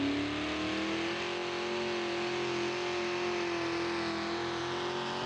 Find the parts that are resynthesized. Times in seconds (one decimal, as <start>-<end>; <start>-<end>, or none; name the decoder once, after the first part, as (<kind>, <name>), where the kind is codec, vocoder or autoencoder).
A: none